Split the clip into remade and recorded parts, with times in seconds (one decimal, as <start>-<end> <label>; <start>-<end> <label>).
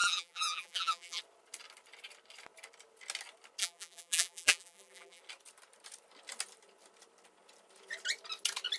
0.0-1.2 remade; 1.2-3.6 recorded; 3.6-5.2 remade; 5.2-8.8 recorded